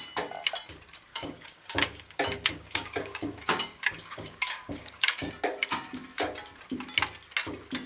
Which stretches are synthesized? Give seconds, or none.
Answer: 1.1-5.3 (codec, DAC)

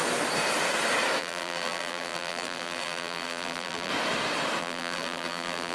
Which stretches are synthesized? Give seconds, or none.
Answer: 1.2-3.9 (vocoder, BigVGAN v2); 4.6-5.7

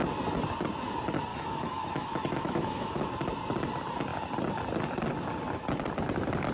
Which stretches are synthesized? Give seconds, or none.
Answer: 1.3-3.1 (autoencoder, DAC-VAE)

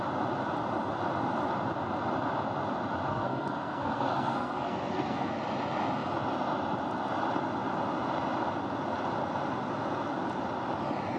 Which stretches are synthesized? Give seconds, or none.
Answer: 3.1-5.3 (codec, SNAC)

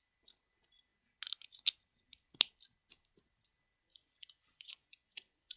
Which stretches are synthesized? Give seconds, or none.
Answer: 3.9-5.6 (vocoder, Vocos)